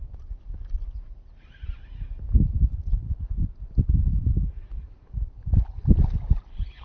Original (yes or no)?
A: yes